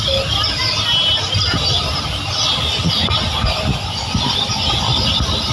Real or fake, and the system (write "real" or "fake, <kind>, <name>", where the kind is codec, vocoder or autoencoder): real